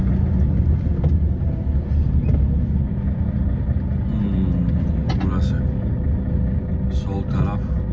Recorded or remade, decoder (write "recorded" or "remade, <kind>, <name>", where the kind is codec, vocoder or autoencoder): recorded